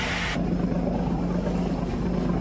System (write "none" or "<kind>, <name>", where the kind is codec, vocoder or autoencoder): none